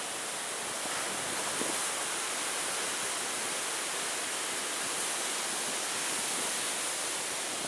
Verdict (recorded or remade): recorded